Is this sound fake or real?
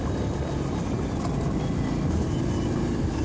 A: real